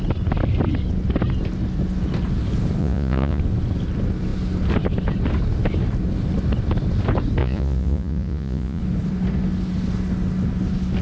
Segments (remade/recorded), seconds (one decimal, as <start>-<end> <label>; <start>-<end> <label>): 0.0-2.8 recorded; 2.8-3.4 remade; 3.4-7.4 recorded; 7.4-8.8 remade; 8.8-11.0 recorded

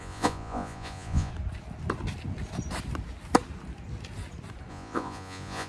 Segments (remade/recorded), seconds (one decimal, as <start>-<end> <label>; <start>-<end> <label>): 0.0-1.3 remade; 1.3-4.7 recorded; 4.7-5.7 remade

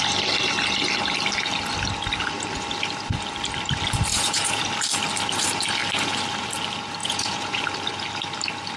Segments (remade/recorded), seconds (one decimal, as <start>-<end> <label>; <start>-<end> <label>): 0.0-4.1 recorded; 4.1-4.6 remade; 4.6-7.0 recorded; 7.0-7.6 remade; 7.6-8.8 recorded

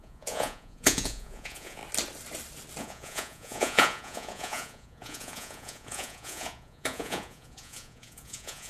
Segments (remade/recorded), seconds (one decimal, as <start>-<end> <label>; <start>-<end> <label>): 0.0-1.8 remade; 1.8-2.8 recorded; 2.8-8.7 remade

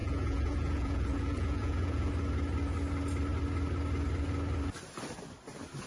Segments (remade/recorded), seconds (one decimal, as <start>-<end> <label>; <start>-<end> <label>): 0.0-2.1 remade; 2.1-5.9 recorded